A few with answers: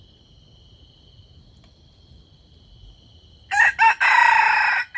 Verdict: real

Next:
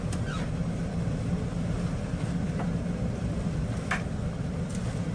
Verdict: real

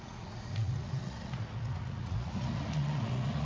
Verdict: fake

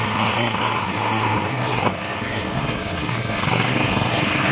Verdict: fake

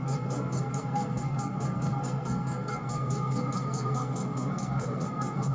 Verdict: fake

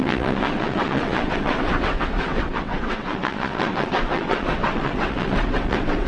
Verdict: fake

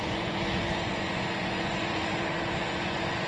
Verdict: fake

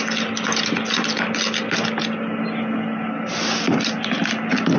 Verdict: real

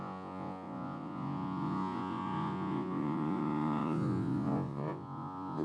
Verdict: fake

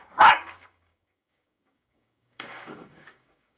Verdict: fake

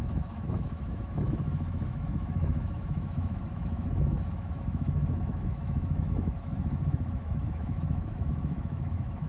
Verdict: fake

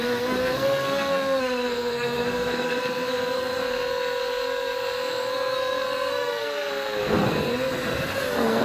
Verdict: fake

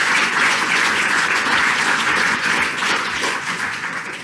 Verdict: fake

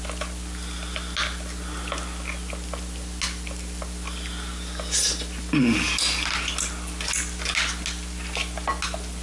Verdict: real